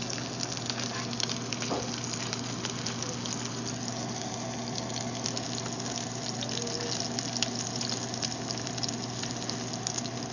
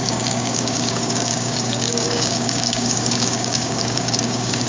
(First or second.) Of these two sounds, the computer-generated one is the second